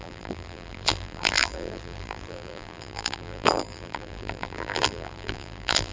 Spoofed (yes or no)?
yes